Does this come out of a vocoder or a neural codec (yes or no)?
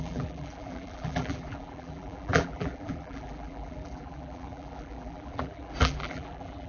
yes